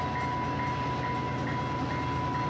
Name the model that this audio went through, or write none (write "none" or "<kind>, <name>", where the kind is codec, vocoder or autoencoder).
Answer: none